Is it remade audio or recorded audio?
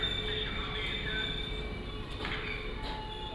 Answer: recorded